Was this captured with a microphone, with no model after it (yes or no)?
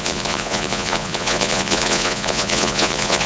no